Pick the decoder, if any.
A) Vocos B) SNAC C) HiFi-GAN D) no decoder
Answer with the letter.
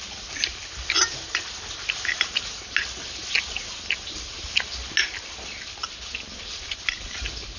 D